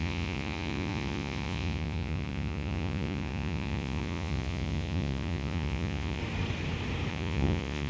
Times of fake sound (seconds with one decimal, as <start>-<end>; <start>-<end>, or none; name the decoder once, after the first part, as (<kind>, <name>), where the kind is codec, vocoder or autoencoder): 0.0-6.2 (vocoder, Vocos); 7.1-7.9